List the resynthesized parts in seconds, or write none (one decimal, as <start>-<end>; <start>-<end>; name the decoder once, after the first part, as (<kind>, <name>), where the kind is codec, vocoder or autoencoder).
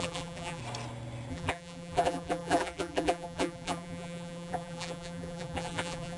0.0-0.6 (vocoder, BigVGAN v2); 1.3-6.2